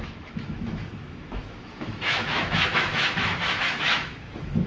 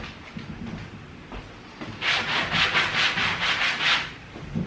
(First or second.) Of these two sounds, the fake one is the first